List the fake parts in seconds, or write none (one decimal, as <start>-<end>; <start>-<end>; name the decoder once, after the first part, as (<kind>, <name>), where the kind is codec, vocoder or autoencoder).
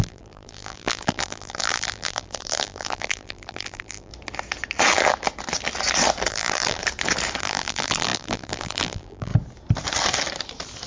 0.0-4.1 (vocoder, BigVGAN v2); 6.3-6.8; 7.4-9.3